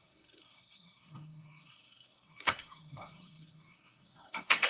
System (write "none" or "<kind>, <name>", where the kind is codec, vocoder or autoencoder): codec, SNAC